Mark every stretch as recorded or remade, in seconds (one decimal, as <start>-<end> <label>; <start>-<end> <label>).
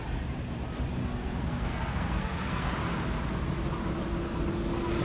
0.0-1.0 recorded; 1.0-2.7 remade; 2.7-5.0 recorded